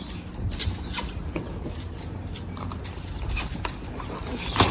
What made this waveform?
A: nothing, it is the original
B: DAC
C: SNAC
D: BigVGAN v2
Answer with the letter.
A